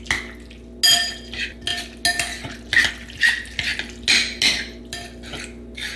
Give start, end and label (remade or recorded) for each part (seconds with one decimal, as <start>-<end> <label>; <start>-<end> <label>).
0.0-6.0 recorded